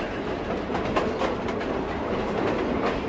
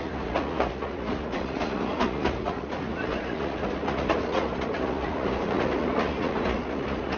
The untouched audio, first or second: first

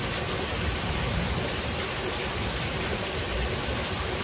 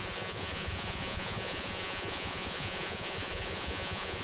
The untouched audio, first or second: first